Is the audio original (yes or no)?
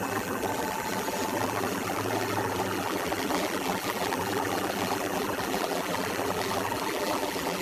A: no